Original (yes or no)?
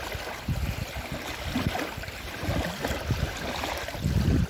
yes